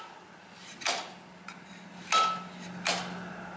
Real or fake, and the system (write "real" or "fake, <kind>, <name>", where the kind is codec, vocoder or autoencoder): real